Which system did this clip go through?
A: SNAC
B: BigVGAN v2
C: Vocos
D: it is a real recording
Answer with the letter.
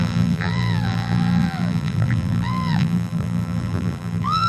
B